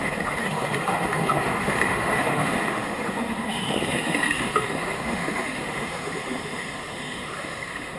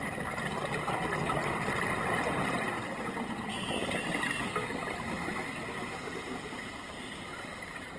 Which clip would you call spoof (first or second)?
first